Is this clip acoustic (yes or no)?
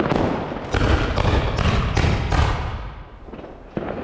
yes